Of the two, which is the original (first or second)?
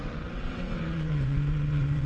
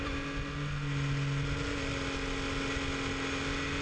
second